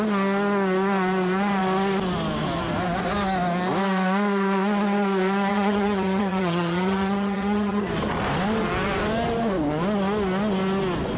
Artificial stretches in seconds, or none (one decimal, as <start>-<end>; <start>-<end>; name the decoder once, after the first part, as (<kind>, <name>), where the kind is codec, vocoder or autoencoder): 5.5-7.9 (vocoder, HiFi-GAN)